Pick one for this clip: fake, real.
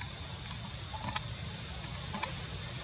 real